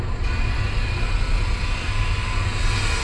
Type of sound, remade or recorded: recorded